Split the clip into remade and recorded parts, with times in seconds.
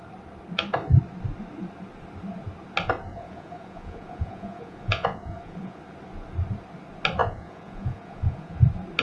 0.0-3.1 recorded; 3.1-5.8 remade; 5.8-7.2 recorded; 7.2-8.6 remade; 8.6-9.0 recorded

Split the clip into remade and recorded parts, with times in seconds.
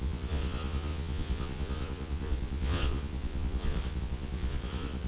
0.0-5.1 remade